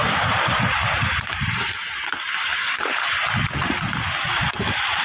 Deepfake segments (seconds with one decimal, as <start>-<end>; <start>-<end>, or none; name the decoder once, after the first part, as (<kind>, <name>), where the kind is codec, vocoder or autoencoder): 0.0-3.0 (vocoder, BigVGAN v2)